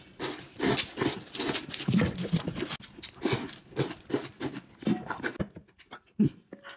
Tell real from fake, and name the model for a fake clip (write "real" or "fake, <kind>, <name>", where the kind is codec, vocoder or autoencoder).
real